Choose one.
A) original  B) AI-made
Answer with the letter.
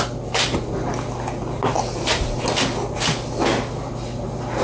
A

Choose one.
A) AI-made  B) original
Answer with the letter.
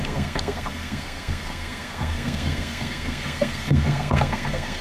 A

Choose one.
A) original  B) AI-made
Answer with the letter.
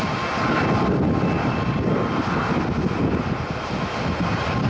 A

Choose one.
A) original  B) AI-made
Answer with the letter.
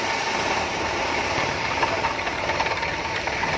B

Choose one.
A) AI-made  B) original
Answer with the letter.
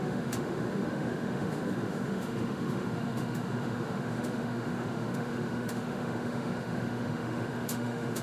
A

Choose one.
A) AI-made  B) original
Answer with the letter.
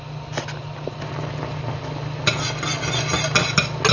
B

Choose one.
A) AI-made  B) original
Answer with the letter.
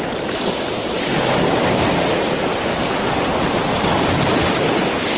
B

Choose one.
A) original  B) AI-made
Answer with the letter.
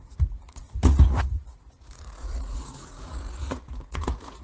B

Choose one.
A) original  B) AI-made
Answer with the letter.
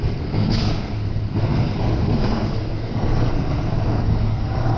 B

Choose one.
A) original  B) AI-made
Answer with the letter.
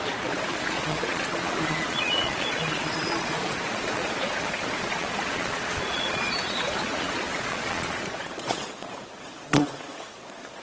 B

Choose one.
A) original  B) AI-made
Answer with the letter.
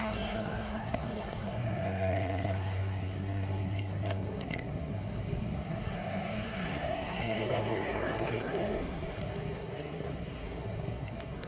B